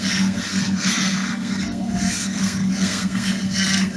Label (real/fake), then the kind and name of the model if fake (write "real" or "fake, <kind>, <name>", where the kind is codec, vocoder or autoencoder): fake, codec, SNAC